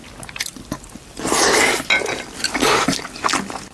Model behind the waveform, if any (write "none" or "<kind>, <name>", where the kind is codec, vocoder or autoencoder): none